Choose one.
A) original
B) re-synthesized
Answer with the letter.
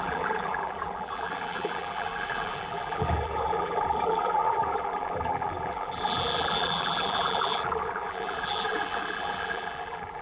B